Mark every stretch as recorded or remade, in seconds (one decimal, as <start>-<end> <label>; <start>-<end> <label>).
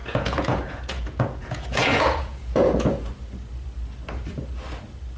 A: 0.0-3.1 remade; 3.1-5.2 recorded